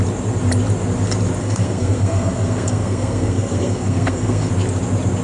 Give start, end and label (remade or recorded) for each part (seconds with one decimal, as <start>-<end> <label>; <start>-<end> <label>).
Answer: 0.0-1.4 recorded; 1.4-4.5 remade; 4.5-5.2 recorded